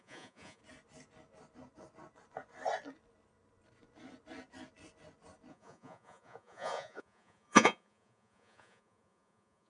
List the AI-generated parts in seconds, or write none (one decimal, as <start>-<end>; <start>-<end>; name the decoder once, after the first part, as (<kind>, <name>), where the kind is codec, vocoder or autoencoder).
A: 0.0-0.6 (vocoder, Vocos); 5.5-9.7